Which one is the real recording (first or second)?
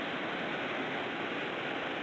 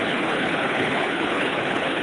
first